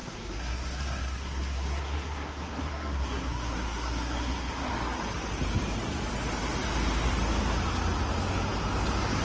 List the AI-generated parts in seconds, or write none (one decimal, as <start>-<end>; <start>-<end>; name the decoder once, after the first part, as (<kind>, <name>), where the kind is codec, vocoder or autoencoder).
0.0-4.7 (codec, SNAC)